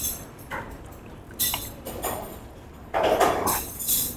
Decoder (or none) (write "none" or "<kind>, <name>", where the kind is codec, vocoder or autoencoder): vocoder, BigVGAN v2